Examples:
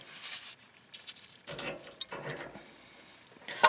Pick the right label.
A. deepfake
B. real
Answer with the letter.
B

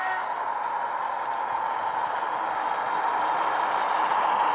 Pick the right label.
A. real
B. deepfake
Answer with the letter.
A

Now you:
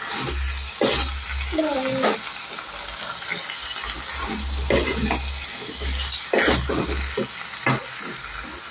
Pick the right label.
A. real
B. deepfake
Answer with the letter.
A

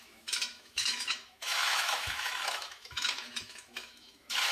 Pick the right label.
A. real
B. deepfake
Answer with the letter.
B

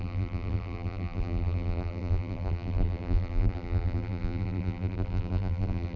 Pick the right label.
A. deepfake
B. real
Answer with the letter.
A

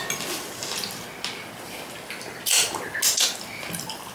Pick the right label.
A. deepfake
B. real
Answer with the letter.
B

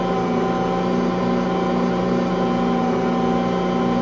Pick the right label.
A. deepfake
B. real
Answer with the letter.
B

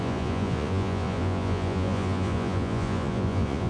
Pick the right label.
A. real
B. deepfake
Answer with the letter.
B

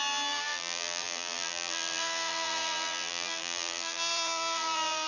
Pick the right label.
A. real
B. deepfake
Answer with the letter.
B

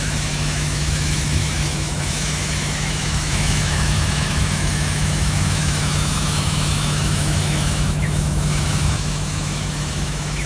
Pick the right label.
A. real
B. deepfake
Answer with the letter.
B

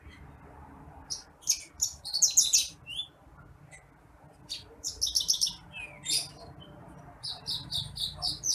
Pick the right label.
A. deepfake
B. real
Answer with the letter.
B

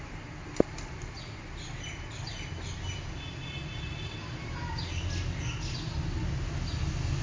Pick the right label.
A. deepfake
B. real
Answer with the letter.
B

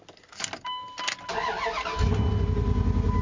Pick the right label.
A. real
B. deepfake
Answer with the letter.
A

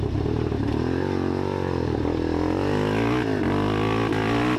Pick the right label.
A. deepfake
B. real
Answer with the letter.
B